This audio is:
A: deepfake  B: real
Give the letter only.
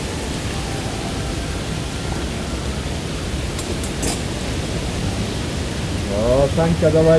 B